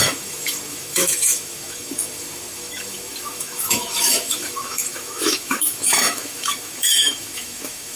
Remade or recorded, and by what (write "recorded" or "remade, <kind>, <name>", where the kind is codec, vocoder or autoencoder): remade, autoencoder, DAC-VAE